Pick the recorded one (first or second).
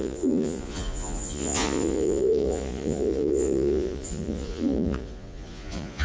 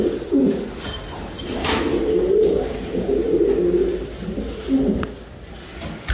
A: second